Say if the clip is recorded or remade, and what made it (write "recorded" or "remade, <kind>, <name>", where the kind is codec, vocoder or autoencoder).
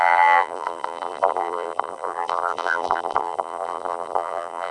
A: remade, vocoder, BigVGAN v2